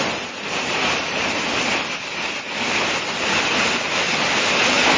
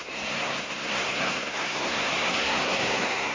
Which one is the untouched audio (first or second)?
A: first